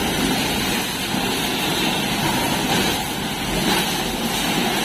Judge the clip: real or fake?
real